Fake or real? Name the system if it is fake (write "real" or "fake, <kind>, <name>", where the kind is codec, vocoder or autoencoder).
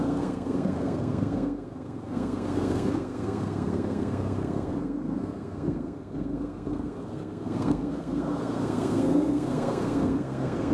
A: fake, codec, SNAC